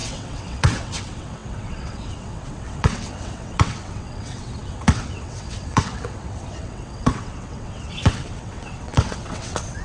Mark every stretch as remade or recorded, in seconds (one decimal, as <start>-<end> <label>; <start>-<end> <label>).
0.0-9.8 remade